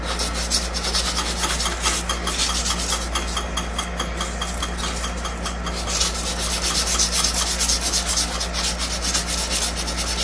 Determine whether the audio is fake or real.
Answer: real